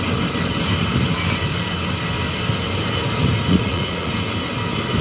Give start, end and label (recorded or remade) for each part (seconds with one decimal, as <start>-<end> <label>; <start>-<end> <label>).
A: 0.0-3.5 recorded; 3.5-4.1 remade; 4.1-5.0 recorded